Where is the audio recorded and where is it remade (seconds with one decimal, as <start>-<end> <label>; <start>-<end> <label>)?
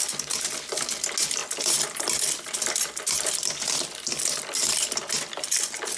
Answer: 0.0-6.0 recorded